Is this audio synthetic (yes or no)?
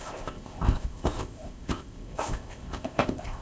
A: yes